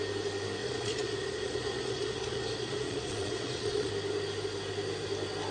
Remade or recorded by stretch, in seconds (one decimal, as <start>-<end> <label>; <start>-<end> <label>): 0.0-0.6 recorded; 0.6-3.9 remade; 3.9-5.5 recorded